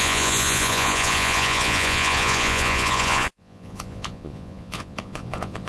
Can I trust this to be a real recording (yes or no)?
no